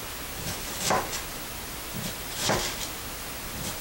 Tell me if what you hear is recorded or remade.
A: recorded